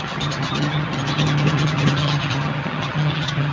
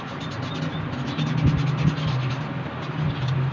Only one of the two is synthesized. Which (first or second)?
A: first